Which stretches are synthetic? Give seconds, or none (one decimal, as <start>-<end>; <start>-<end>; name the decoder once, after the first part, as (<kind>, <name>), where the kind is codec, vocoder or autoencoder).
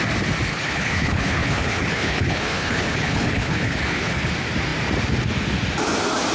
0.5-4.3 (codec, HILCodec)